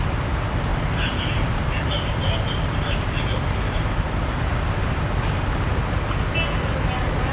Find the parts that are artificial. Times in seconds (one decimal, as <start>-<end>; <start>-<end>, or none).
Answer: 0.7-5.0